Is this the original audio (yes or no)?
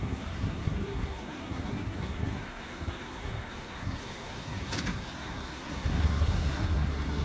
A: no